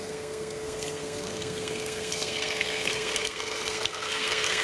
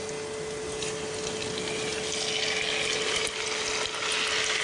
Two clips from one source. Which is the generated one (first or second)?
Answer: first